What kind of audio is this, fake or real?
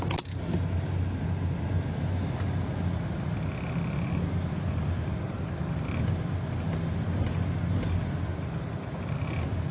real